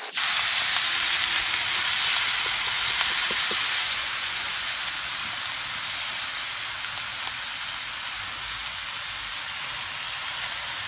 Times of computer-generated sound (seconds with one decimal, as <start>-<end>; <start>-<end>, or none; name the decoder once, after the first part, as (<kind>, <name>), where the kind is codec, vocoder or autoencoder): 3.8-4.9 (vocoder, Vocos)